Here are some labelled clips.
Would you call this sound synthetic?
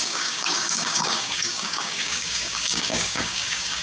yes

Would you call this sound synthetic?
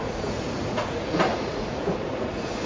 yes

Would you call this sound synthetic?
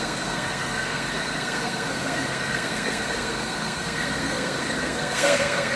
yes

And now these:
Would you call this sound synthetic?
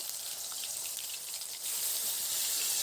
yes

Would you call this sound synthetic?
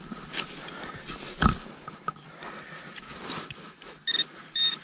no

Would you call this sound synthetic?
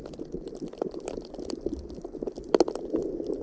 no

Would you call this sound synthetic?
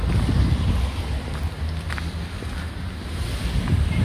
no